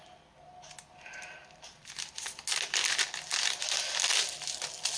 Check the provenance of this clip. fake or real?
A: real